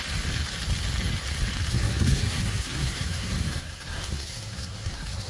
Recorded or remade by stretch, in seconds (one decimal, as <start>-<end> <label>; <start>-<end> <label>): 0.0-1.7 recorded; 1.7-5.3 remade

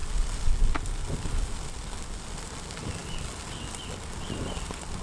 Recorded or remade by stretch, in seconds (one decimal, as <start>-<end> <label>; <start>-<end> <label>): 0.0-5.0 recorded

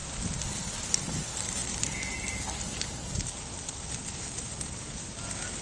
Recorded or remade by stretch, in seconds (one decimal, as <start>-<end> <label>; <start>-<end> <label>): 0.0-5.6 recorded

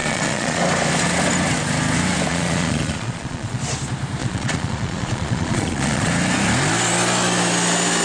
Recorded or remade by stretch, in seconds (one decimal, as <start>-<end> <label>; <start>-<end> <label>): 0.0-0.6 remade; 0.6-2.3 recorded; 2.3-3.6 remade; 3.6-4.2 recorded; 4.2-6.1 remade; 6.1-8.0 recorded